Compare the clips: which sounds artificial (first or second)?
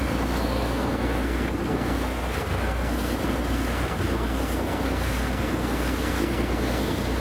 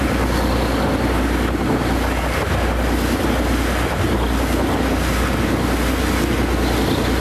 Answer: first